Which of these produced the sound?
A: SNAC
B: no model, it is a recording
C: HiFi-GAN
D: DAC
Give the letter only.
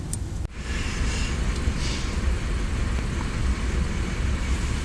B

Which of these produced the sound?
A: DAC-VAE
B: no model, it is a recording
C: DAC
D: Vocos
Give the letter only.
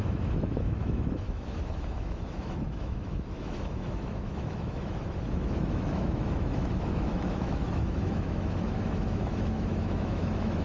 A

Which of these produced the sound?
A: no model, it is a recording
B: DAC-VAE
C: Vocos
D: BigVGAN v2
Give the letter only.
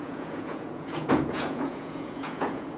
C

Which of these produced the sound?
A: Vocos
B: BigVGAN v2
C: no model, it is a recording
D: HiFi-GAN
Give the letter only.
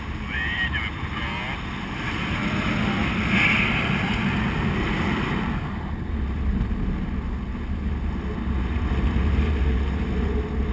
C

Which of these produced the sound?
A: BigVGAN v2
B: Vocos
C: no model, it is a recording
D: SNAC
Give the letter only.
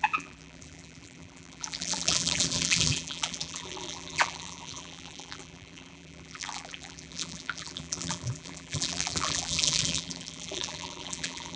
A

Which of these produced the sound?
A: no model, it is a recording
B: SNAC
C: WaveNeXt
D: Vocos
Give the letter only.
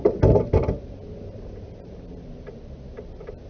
A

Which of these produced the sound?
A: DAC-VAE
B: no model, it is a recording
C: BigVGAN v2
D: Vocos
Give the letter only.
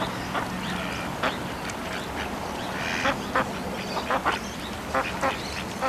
B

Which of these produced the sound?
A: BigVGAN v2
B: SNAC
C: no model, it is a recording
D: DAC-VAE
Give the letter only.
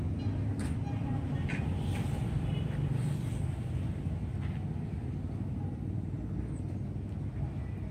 C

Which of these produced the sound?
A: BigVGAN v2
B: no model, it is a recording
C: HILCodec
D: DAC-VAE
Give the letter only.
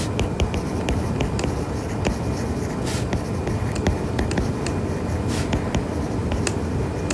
B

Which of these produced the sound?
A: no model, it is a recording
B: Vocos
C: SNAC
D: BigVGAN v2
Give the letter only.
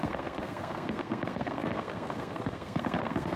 C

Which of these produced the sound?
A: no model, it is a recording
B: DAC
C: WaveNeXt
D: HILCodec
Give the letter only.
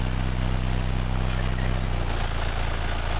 A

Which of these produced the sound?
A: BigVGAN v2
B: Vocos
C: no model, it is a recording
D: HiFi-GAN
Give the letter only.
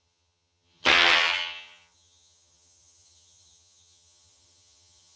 D